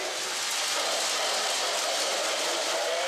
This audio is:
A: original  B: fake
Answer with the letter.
A